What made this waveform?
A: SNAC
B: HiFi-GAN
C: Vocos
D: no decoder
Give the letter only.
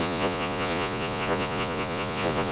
C